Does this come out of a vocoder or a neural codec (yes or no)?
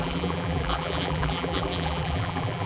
yes